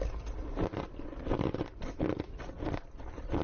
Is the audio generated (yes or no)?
no